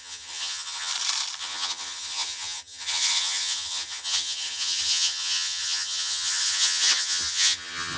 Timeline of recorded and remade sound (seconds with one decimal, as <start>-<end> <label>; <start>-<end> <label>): 0.0-0.9 remade; 0.9-1.4 recorded; 1.4-8.0 remade